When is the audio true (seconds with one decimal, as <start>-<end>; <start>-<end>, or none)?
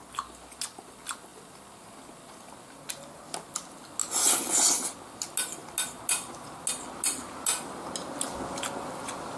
0.0-9.4